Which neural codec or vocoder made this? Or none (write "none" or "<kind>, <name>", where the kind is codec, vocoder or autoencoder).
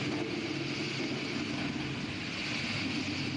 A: none